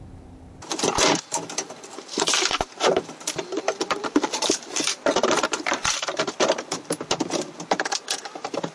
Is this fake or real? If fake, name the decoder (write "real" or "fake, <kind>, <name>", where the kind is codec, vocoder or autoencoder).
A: fake, vocoder, BigVGAN v2